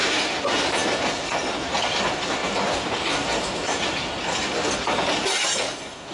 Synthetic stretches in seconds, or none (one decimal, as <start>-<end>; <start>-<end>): none